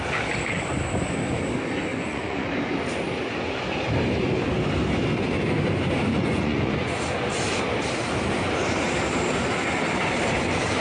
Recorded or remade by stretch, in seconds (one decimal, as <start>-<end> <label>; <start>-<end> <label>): 0.0-1.9 recorded; 1.9-2.5 remade; 2.5-6.1 recorded; 6.1-7.0 remade; 7.0-10.8 recorded